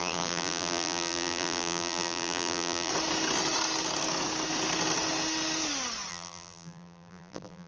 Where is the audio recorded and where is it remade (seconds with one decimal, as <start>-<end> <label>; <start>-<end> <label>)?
0.0-2.9 remade; 2.9-6.1 recorded; 6.1-7.7 remade